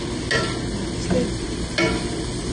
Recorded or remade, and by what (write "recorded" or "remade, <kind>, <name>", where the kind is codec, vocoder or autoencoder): recorded